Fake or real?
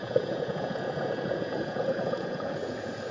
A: fake